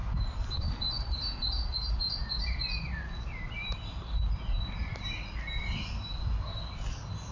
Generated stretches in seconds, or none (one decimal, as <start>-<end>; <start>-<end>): none